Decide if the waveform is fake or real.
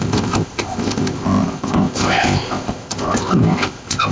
fake